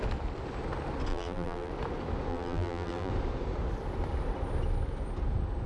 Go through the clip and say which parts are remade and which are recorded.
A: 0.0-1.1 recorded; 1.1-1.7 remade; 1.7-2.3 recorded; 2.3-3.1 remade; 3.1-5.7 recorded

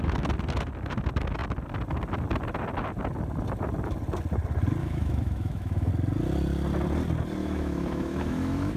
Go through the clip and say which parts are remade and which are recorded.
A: 0.0-4.8 recorded; 4.8-5.9 remade; 5.9-7.4 recorded; 7.4-8.8 remade

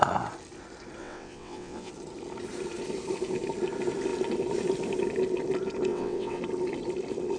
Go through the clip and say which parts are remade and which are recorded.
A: 0.0-1.0 recorded; 1.0-1.9 remade; 1.9-5.9 recorded; 5.9-6.4 remade; 6.4-7.4 recorded